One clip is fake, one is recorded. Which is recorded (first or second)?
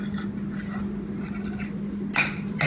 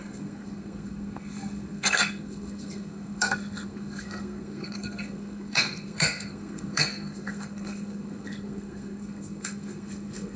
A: first